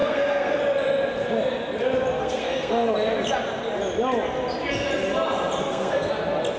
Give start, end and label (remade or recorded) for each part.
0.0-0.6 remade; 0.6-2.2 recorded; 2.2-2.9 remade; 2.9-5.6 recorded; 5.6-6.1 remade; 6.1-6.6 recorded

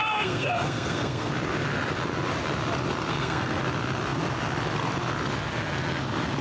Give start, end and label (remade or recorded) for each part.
0.0-1.3 remade; 1.3-3.1 recorded; 3.1-3.6 remade; 3.6-6.4 recorded

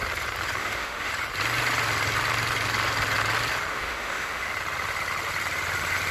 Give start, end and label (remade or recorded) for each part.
0.0-0.6 recorded; 0.6-1.1 remade; 1.1-3.7 recorded; 3.7-4.5 remade; 4.5-6.1 recorded

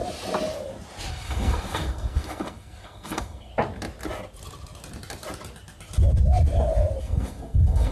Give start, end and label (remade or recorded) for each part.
0.0-1.1 recorded; 1.1-3.5 remade; 3.5-7.0 recorded; 7.0-7.9 remade